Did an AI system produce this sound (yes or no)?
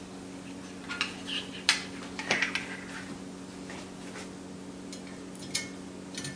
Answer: no